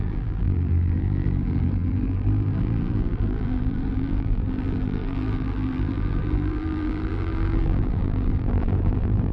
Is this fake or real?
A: fake